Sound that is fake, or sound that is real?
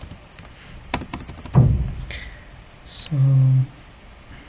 real